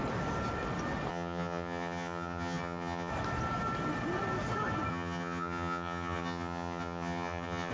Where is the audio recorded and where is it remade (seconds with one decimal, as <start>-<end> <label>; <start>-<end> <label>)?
0.0-1.1 recorded; 1.1-3.1 remade; 3.1-4.9 recorded; 4.9-7.7 remade